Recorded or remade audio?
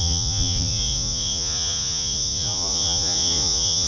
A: remade